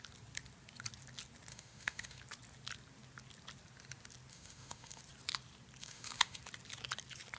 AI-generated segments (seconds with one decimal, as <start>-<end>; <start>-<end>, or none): 1.5-2.2; 4.3-5.0; 5.8-6.4